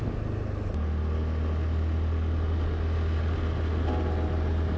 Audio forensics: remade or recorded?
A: recorded